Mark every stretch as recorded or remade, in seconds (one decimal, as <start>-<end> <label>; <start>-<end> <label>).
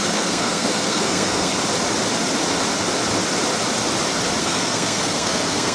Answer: 0.0-1.5 remade; 1.5-4.4 recorded; 4.4-5.7 remade